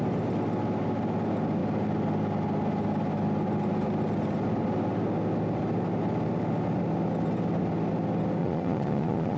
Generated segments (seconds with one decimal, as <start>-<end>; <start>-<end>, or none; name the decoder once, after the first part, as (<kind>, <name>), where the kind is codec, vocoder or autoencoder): 8.4-9.4 (vocoder, Vocos)